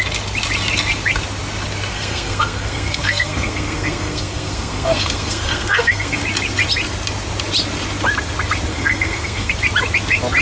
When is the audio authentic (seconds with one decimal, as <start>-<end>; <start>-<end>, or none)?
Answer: 0.0-1.9; 6.2-8.7; 9.5-10.4